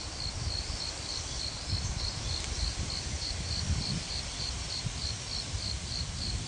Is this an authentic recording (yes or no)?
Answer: no